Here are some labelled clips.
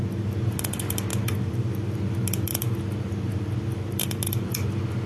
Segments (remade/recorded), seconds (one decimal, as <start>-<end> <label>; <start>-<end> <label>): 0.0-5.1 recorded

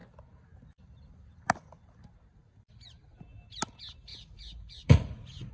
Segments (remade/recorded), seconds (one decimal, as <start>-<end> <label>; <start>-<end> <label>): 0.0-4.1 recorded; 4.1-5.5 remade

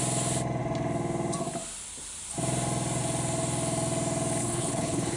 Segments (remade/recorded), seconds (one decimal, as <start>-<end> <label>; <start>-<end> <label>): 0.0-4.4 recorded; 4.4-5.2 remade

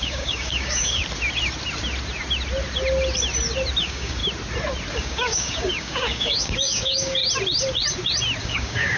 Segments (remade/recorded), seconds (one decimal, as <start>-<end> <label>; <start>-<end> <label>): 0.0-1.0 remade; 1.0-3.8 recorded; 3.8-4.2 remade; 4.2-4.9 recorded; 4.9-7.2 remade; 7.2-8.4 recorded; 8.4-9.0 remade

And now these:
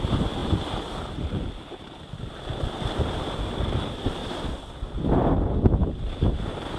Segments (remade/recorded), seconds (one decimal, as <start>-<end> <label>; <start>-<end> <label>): 0.0-4.2 recorded; 4.2-5.0 remade; 5.0-6.8 recorded

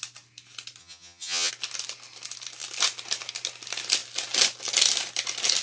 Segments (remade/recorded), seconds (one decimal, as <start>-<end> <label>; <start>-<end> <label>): 0.0-0.8 recorded; 0.8-1.5 remade; 1.5-5.6 recorded